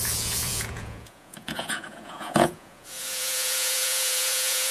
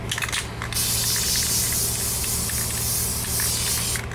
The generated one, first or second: first